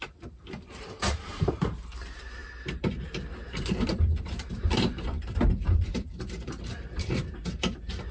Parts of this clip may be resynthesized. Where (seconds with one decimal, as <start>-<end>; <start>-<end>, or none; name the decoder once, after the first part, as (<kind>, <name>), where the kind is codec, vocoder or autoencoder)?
0.0-8.1 (vocoder, BigVGAN v2)